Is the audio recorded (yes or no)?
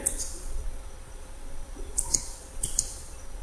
no